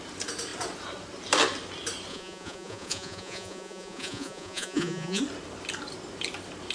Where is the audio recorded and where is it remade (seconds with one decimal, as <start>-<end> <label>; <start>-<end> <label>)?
0.0-2.1 recorded; 2.1-5.2 remade; 5.2-6.7 recorded